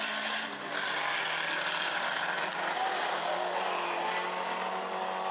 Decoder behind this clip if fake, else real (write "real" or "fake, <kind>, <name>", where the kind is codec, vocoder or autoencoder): real